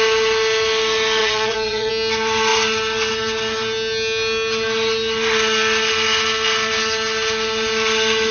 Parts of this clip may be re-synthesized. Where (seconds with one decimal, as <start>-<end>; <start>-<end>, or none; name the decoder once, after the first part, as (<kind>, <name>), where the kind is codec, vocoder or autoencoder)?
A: 1.2-1.9 (vocoder, Vocos)